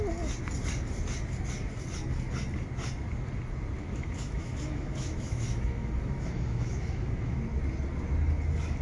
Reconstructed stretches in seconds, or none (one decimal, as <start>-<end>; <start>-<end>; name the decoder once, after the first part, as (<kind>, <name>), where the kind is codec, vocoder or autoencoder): 3.8-7.4 (autoencoder, DAC-VAE)